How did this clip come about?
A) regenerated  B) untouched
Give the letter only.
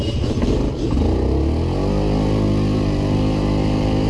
B